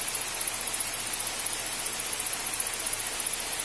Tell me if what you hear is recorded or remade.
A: recorded